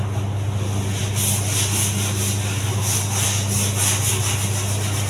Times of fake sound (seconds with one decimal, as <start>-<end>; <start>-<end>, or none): none